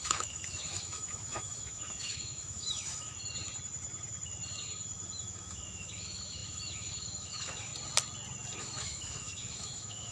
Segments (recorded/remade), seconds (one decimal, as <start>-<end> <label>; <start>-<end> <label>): 0.0-3.2 remade; 3.2-5.2 recorded; 5.2-7.7 remade; 7.7-8.6 recorded; 8.6-10.1 remade